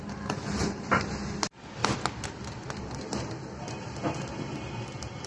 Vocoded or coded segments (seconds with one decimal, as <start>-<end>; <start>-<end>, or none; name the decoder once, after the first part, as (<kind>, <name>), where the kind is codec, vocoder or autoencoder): none